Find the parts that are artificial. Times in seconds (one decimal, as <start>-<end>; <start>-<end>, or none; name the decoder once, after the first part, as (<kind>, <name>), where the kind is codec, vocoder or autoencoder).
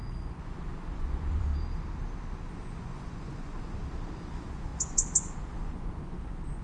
0.0-1.5 (vocoder, Vocos); 2.5-3.8; 4.3-6.6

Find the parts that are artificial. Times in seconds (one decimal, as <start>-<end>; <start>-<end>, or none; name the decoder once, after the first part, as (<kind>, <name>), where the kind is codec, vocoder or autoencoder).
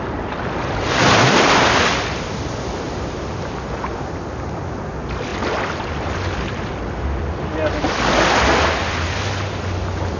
none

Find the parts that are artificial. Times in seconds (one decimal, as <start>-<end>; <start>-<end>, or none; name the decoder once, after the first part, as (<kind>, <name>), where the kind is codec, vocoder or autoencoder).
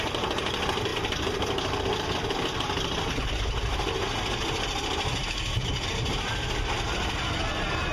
none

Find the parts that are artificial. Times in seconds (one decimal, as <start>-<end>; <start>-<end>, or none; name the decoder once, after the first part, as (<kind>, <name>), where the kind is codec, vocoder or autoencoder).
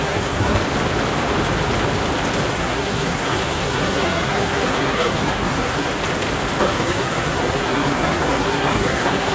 0.0-0.6 (codec, SNAC); 2.5-5.9; 6.6-9.3